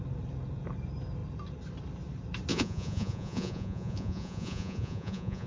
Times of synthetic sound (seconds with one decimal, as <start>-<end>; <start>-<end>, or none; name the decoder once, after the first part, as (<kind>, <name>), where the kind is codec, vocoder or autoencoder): 2.5-5.5 (vocoder, Vocos)